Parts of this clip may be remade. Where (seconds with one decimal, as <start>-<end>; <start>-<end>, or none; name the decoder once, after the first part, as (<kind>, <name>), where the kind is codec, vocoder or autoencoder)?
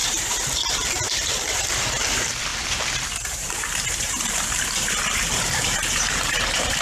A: 0.0-6.8 (vocoder, BigVGAN v2)